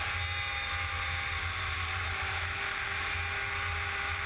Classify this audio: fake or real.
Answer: real